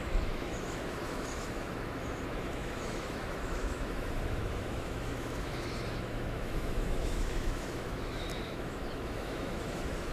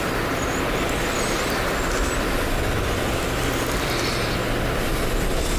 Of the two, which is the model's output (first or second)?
first